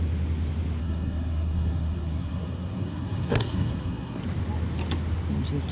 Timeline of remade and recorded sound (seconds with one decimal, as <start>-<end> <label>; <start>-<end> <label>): 0.0-0.8 recorded; 0.8-4.2 remade; 4.2-5.7 recorded